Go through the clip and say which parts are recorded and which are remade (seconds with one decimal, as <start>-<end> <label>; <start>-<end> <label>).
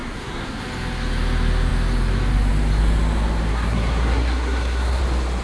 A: 0.0-0.6 remade; 0.6-3.5 recorded; 3.5-5.0 remade; 5.0-5.4 recorded